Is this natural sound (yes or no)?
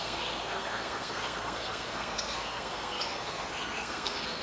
no